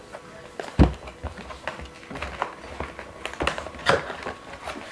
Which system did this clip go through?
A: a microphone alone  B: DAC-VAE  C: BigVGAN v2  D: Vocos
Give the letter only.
A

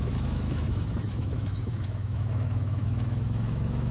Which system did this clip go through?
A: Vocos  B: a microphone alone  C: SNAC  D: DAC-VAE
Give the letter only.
D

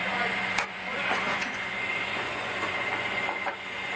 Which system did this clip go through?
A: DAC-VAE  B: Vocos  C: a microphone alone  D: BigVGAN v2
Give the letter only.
B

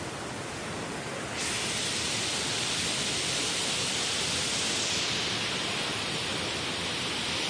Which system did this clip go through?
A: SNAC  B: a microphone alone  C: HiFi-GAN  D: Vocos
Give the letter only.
B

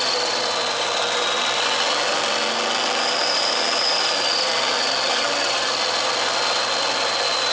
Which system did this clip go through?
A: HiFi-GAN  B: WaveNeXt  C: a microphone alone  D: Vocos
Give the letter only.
C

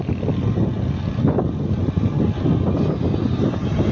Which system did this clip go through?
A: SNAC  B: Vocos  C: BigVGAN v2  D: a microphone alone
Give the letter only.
D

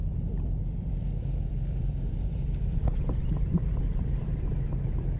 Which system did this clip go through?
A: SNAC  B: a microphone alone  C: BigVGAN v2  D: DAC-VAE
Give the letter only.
C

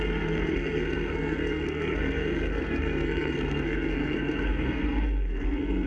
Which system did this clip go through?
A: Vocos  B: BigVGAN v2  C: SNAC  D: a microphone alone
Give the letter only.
C